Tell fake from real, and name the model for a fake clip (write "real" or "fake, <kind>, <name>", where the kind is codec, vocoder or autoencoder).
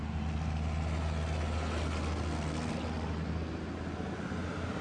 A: real